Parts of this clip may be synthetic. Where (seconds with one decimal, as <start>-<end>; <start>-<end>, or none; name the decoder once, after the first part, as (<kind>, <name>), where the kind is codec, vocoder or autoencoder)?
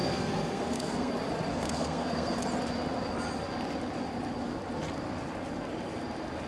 0.0-1.1 (codec, SNAC); 1.5-2.4